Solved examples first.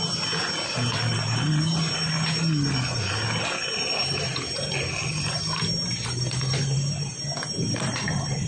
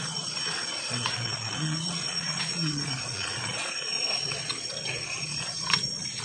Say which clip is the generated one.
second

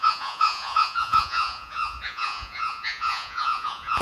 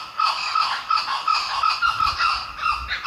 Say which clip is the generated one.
first